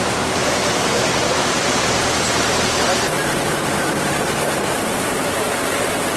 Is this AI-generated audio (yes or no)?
yes